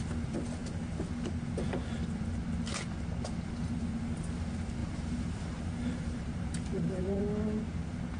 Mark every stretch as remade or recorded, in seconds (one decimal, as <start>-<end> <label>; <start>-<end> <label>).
0.0-4.8 recorded; 4.8-7.2 remade; 7.2-8.2 recorded